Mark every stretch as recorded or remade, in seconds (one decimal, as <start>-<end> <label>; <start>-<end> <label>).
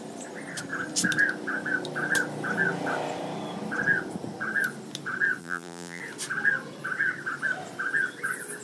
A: 0.0-5.4 recorded; 5.4-6.0 remade; 6.0-8.6 recorded